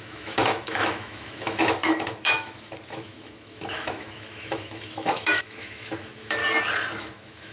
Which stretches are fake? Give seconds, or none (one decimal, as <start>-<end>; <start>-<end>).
0.0-6.4; 7.0-7.5